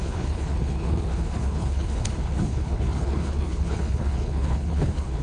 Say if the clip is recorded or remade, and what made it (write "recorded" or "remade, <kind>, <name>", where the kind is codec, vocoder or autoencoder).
remade, codec, HILCodec